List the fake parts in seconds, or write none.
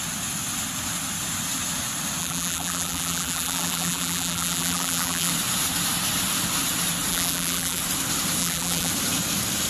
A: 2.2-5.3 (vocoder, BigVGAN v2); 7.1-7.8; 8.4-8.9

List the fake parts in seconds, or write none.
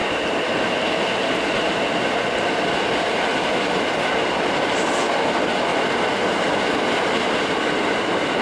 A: none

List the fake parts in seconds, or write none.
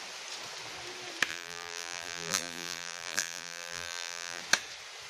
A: 1.3-4.4 (vocoder, BigVGAN v2)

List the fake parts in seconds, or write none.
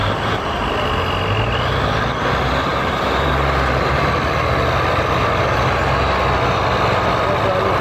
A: 0.0-0.6 (vocoder, BigVGAN v2); 2.7-3.3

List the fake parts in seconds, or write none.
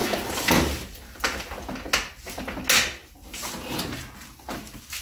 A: none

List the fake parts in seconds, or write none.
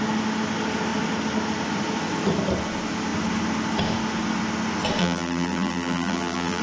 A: 5.0-6.6 (vocoder, BigVGAN v2)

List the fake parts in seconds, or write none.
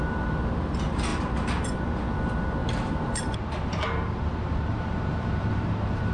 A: 1.1-1.9 (vocoder, BigVGAN v2); 2.6-6.1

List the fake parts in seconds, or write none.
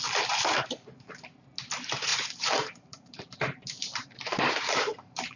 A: 2.1-5.4 (vocoder, BigVGAN v2)